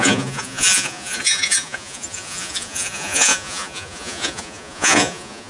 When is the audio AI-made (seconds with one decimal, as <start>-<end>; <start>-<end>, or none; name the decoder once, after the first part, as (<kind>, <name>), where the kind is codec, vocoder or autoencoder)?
0.0-5.5 (vocoder, Vocos)